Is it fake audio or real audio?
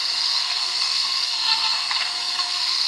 fake